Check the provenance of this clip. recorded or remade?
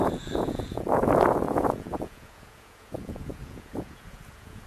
remade